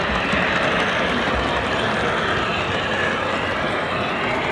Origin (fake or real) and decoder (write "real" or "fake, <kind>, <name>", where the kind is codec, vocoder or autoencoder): real